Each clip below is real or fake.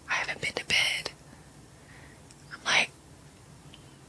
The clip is real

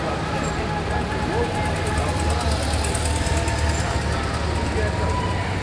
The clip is real